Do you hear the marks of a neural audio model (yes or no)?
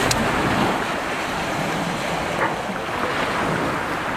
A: no